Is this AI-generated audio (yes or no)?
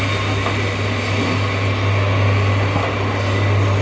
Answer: no